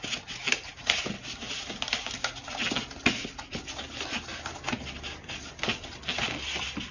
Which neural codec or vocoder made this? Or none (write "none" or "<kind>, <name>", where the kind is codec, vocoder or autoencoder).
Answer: none